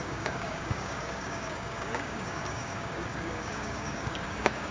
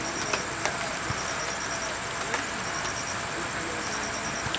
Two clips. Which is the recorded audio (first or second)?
second